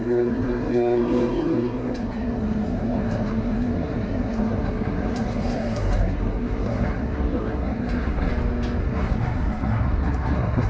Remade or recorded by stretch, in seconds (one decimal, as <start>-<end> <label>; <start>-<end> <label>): 0.0-8.3 remade; 8.3-8.8 recorded; 8.8-10.7 remade

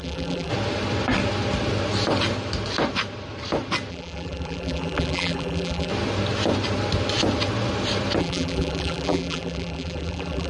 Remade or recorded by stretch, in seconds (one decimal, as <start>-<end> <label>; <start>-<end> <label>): 0.0-0.5 remade; 0.5-3.9 recorded; 3.9-5.9 remade; 5.9-8.2 recorded; 8.2-10.5 remade

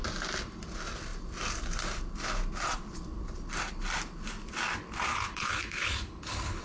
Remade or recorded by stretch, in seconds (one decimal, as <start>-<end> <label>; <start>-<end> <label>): 0.0-5.1 recorded; 5.1-6.6 remade

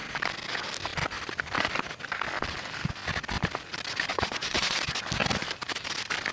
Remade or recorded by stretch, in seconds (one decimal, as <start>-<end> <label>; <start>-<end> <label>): 0.0-4.1 recorded; 4.1-4.8 remade; 4.8-6.3 recorded

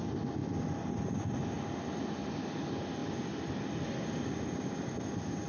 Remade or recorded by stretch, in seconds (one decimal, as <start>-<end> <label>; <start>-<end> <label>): 0.0-5.5 recorded

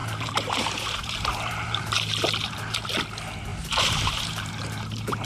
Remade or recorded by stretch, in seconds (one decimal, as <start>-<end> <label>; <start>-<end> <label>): 0.0-2.9 remade; 2.9-3.5 recorded; 3.5-5.3 remade